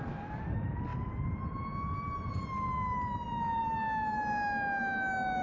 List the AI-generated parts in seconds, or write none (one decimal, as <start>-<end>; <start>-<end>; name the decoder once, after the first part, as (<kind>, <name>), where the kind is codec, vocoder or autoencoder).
none